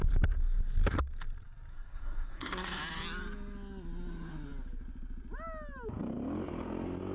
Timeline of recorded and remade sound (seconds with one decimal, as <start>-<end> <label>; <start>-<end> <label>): 0.0-1.7 recorded; 1.7-2.8 remade; 2.8-7.1 recorded